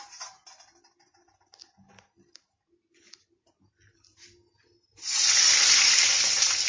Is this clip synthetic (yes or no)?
no